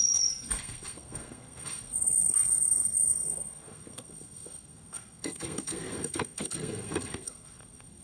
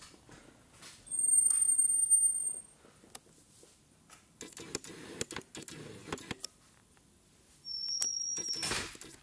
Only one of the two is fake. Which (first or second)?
first